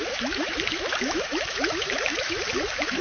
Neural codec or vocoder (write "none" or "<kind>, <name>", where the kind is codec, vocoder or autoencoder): autoencoder, DAC-VAE